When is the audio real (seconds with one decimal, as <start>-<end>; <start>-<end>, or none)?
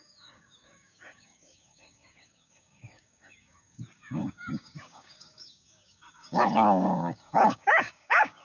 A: none